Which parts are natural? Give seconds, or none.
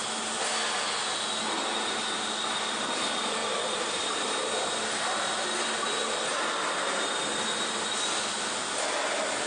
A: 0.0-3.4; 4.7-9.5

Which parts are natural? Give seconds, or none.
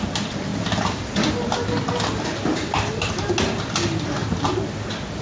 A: 0.0-5.2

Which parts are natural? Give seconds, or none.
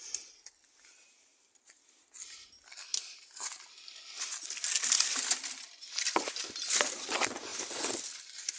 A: 0.0-8.6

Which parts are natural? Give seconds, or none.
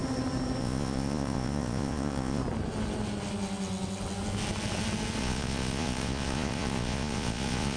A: 0.0-0.6; 2.4-5.2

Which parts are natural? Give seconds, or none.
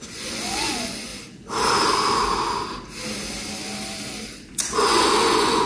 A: 1.1-4.5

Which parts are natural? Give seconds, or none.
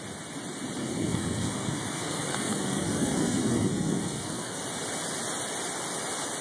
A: 0.0-0.8; 4.6-6.4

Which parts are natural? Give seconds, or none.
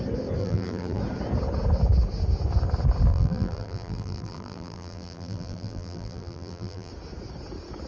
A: 0.0-0.4; 1.0-3.1; 6.9-7.9